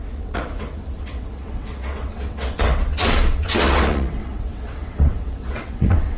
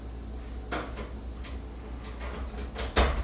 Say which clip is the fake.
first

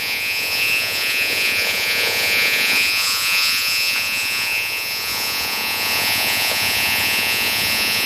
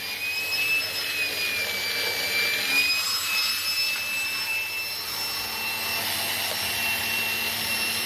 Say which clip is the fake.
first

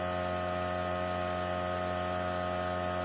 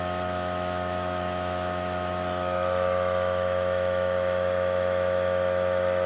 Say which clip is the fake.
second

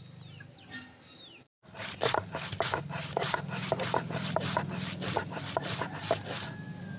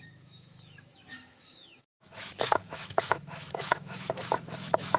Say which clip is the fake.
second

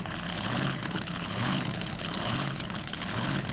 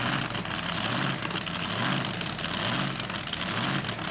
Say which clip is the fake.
first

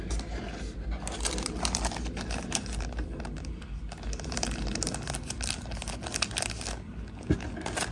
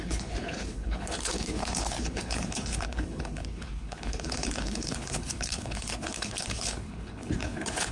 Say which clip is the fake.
second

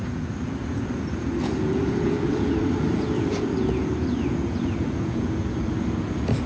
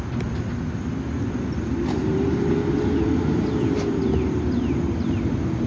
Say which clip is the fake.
first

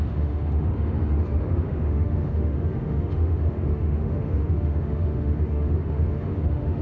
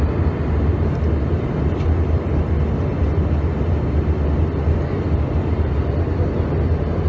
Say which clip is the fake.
first